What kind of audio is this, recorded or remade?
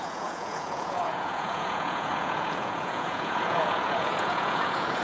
remade